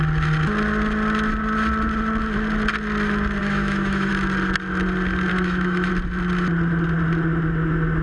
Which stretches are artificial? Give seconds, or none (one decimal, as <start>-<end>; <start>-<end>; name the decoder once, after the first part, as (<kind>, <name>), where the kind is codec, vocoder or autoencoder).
3.4-4.1 (autoencoder, DAC-VAE); 5.3-5.9